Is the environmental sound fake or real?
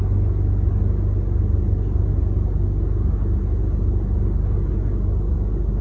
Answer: real